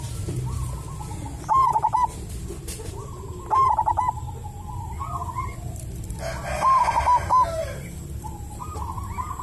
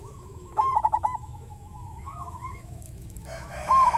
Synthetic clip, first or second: second